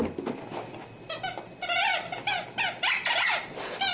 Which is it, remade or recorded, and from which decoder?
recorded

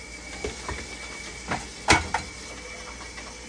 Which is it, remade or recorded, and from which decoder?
recorded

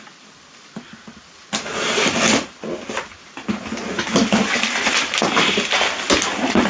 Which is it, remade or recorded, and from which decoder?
recorded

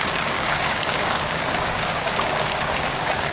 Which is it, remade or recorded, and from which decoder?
remade, codec, DAC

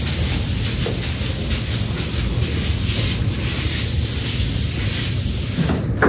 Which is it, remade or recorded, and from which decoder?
recorded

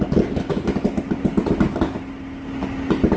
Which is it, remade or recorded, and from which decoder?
recorded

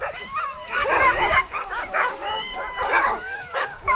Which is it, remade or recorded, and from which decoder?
remade, codec, DAC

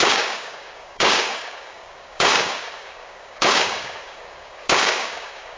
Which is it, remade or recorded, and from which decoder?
remade, codec, DAC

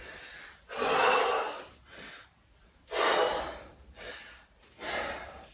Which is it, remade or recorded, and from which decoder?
recorded